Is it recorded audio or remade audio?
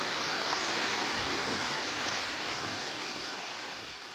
remade